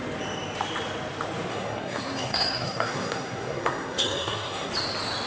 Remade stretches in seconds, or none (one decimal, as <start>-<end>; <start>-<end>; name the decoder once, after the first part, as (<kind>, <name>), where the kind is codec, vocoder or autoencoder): 1.5-4.7 (codec, SNAC)